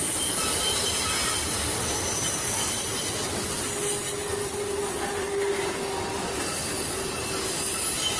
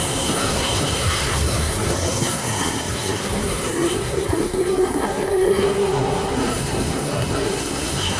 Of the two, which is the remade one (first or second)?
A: second